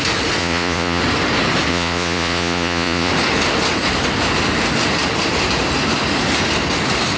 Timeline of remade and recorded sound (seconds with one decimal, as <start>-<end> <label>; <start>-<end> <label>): 0.0-0.4 recorded; 0.4-1.0 remade; 1.0-1.7 recorded; 1.7-3.1 remade; 3.1-7.2 recorded